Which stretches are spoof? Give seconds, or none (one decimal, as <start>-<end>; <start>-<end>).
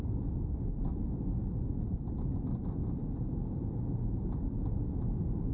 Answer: none